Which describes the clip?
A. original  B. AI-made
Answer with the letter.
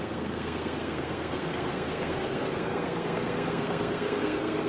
B